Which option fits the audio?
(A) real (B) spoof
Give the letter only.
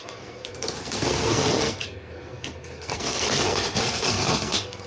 B